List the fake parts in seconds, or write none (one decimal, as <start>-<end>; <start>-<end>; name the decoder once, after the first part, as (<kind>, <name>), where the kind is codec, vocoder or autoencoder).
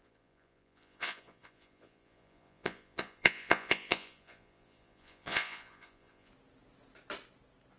0.0-6.3 (vocoder, Vocos)